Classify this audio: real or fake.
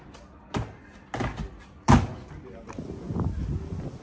real